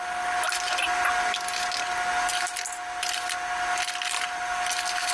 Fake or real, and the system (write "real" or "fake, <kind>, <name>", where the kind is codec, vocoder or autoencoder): real